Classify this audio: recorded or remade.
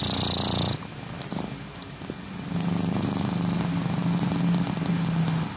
recorded